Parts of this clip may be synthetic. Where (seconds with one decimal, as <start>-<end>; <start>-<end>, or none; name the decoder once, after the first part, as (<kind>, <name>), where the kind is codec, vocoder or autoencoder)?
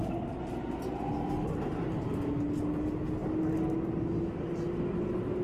3.2-4.8 (vocoder, BigVGAN v2)